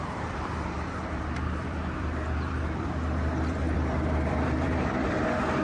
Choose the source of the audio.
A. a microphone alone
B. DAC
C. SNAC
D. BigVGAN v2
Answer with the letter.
D